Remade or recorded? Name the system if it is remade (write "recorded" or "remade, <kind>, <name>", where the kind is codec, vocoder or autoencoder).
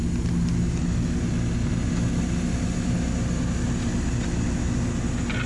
recorded